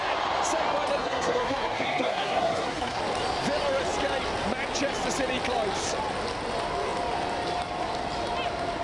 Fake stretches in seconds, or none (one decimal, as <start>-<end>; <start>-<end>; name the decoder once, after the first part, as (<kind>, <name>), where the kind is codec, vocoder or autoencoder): 1.0-3.0 (codec, SNAC)